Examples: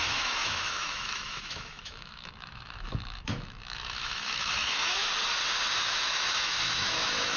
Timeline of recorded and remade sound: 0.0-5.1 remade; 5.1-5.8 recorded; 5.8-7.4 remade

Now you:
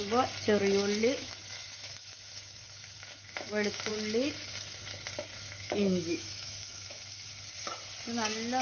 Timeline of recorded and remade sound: 0.0-1.0 recorded; 1.0-3.9 remade; 3.9-5.3 recorded; 5.3-7.3 remade; 7.3-8.6 recorded

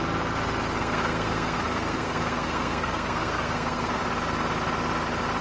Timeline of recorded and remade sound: 0.0-0.8 recorded; 0.8-4.0 remade; 4.0-5.4 recorded

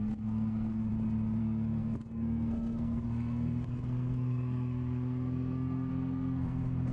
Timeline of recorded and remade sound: 0.0-0.9 remade; 0.9-1.4 recorded; 1.4-6.9 remade

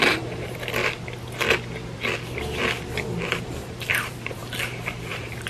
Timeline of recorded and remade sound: 0.0-0.8 remade; 0.8-3.4 recorded; 3.4-4.4 remade; 4.4-5.1 recorded; 5.1-5.5 remade